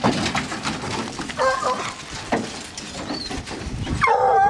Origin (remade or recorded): recorded